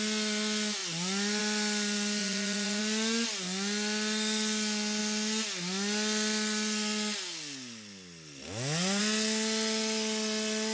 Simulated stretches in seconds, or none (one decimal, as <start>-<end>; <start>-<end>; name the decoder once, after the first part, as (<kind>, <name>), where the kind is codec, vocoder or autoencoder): 2.2-2.8 (vocoder, Vocos)